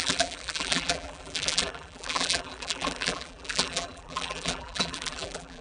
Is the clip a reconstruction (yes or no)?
yes